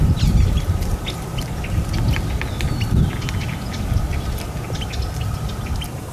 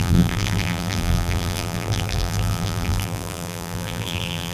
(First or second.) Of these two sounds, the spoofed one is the second